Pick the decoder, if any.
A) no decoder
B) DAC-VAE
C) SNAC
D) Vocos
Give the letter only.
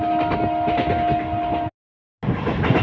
A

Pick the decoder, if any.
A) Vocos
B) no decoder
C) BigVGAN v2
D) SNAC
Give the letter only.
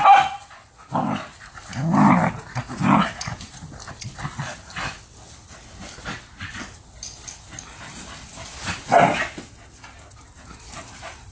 B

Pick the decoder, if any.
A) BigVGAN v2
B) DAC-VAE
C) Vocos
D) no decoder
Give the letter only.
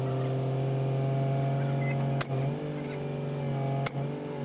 D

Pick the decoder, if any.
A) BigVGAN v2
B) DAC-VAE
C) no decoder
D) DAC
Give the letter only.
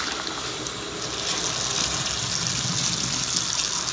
C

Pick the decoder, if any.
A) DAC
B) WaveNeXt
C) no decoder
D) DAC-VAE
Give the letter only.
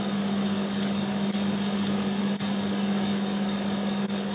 A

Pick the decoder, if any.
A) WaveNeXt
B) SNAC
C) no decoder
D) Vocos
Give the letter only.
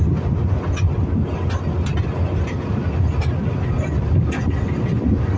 C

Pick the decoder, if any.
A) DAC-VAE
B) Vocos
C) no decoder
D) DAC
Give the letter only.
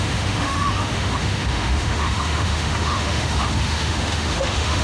A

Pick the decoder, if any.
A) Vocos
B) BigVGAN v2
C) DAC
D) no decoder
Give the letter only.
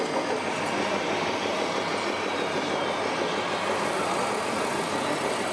D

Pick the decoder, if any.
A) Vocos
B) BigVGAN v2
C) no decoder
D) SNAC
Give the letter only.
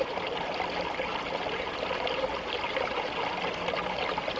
C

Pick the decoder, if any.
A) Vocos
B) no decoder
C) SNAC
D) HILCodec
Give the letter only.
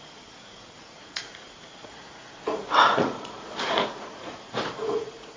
A